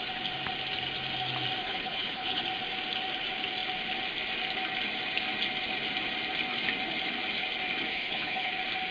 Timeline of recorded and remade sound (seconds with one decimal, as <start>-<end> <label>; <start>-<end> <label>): 0.0-1.6 recorded; 1.6-2.4 remade; 2.4-7.9 recorded; 7.9-8.5 remade; 8.5-8.9 recorded